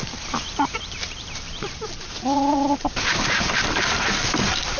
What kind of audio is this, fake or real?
fake